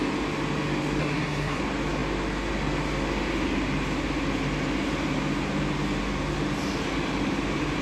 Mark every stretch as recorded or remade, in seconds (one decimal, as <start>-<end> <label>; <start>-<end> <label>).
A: 0.0-1.0 recorded; 1.0-1.6 remade; 1.6-7.8 recorded